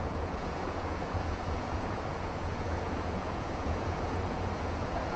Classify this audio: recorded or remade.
remade